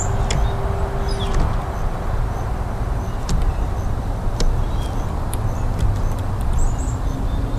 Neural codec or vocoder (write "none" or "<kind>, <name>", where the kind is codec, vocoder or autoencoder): none